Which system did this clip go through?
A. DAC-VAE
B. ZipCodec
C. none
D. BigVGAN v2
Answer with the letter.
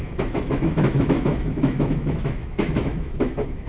A